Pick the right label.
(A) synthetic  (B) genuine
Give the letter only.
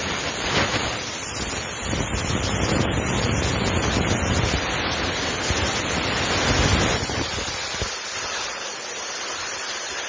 B